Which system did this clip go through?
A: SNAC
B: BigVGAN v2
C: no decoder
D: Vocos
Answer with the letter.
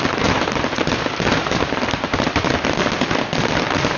B